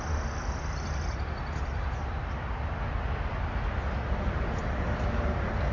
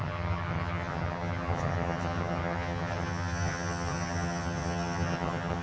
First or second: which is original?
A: first